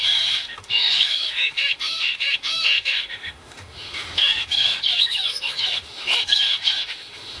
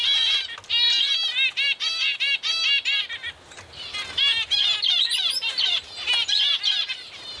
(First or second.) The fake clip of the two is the first